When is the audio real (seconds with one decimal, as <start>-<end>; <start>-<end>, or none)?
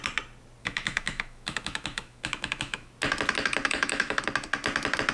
0.0-0.6; 2.9-3.6; 4.2-5.1